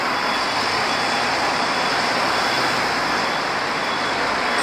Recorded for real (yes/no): yes